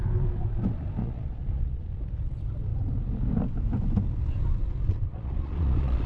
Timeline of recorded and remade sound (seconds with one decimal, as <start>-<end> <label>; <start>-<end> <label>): 0.0-1.0 recorded; 1.0-1.9 remade; 1.9-5.1 recorded; 5.1-6.1 remade